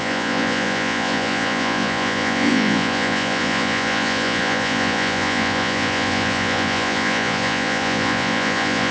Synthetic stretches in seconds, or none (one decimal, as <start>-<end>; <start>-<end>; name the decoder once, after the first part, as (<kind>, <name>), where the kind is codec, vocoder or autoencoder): 0.0-8.9 (vocoder, Vocos)